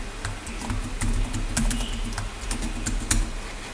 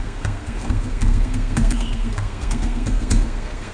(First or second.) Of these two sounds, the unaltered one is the first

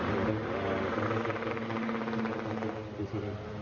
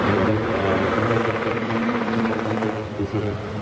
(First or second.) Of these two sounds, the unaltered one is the first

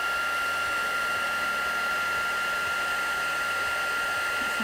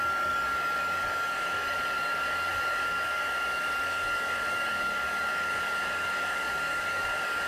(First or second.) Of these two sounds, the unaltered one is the first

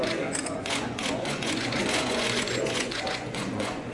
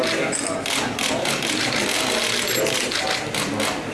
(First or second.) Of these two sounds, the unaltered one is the second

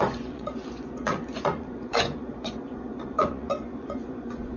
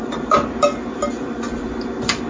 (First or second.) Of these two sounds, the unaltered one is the second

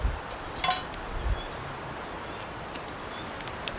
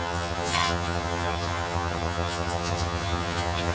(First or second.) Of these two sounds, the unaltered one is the first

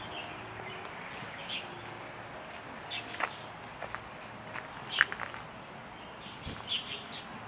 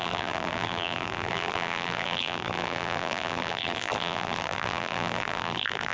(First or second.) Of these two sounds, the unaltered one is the first